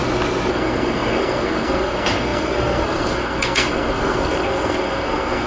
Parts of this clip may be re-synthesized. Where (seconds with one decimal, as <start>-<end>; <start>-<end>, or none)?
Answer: 0.5-5.5